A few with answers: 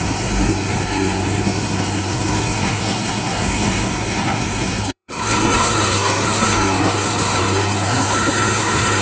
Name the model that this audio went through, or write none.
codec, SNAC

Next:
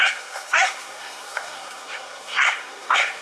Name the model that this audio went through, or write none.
codec, SNAC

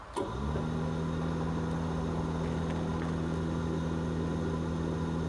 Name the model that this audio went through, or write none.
none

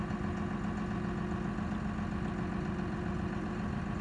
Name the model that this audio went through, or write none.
none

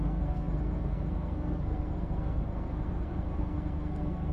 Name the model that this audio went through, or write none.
codec, SNAC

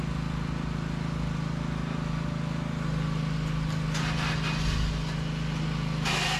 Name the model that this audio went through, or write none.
none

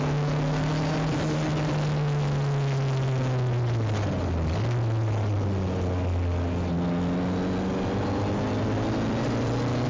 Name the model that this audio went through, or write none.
none